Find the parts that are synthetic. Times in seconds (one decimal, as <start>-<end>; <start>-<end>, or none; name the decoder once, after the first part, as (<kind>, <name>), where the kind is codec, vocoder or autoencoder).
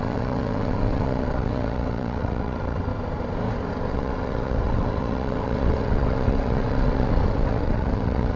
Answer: 0.0-2.9 (vocoder, WaveNeXt); 3.9-8.4